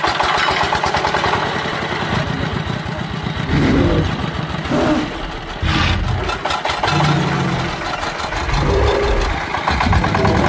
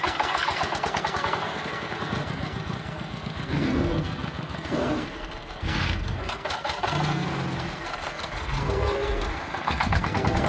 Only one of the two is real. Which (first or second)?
first